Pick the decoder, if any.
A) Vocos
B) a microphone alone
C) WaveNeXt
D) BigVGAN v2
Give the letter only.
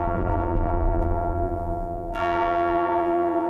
D